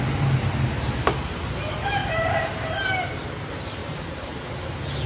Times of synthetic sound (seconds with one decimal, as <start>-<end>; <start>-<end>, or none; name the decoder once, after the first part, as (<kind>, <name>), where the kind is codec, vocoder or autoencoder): 2.0-3.2 (vocoder, BigVGAN v2); 3.8-4.4